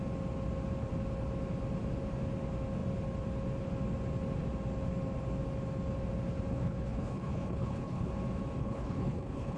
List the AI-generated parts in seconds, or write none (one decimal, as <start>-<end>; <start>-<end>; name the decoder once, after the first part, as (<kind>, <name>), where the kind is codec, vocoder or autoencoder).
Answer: 6.5-8.1 (codec, HILCodec); 8.6-9.6